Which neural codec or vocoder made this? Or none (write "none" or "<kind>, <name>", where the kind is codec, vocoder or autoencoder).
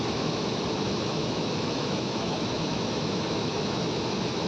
autoencoder, DAC-VAE